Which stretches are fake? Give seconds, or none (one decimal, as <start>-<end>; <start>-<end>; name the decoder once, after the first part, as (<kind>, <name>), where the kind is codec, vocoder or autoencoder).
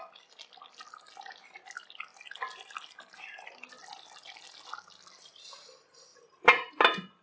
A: 2.1-3.7 (vocoder, BigVGAN v2); 6.1-6.7